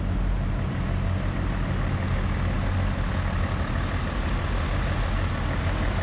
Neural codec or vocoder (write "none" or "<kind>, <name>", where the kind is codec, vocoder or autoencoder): none